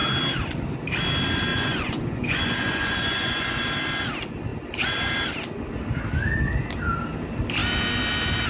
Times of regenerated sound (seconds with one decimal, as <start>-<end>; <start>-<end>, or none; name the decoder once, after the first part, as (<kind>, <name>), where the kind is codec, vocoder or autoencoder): 1.5-3.6 (vocoder, Vocos)